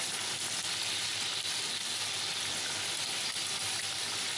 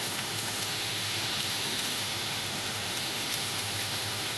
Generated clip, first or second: second